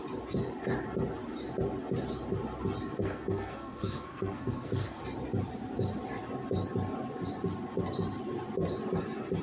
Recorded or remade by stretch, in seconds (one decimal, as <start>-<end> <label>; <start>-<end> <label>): 0.0-3.0 recorded; 3.0-5.0 remade; 5.0-9.4 recorded